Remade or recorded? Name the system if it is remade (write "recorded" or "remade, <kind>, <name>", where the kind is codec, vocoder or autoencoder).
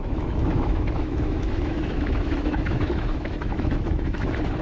remade, autoencoder, DAC-VAE